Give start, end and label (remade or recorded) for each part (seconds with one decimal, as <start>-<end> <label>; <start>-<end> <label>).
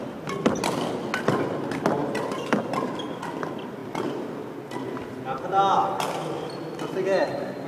0.0-7.7 recorded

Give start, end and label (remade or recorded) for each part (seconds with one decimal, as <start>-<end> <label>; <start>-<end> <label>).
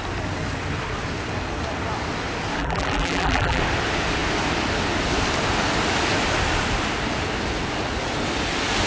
0.0-2.6 recorded; 2.6-3.6 remade; 3.6-8.9 recorded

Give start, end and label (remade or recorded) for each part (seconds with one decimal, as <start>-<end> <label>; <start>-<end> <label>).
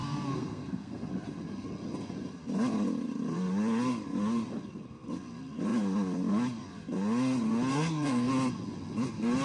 0.0-1.0 remade; 1.0-7.7 recorded; 7.7-8.3 remade; 8.3-9.4 recorded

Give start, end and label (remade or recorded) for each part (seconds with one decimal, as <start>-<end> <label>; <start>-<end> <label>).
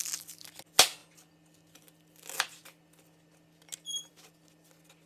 0.0-5.1 recorded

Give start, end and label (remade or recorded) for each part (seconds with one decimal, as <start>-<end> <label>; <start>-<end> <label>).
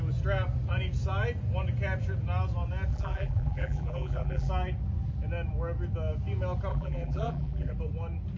0.0-2.9 recorded; 2.9-4.5 remade; 4.5-6.7 recorded; 6.7-7.7 remade; 7.7-8.4 recorded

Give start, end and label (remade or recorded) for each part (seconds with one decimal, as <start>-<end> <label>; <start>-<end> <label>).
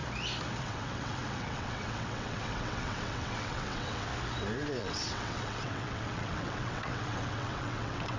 0.0-0.6 recorded; 0.6-4.1 remade; 4.1-4.8 recorded; 4.8-8.2 remade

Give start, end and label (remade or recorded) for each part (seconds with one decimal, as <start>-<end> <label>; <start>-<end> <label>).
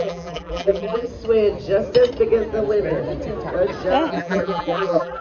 0.0-1.1 remade; 1.1-4.1 recorded; 4.1-5.2 remade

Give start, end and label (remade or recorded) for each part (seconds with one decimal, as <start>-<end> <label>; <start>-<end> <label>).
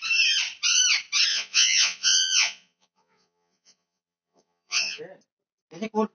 0.0-1.3 recorded; 1.3-5.0 remade; 5.0-6.1 recorded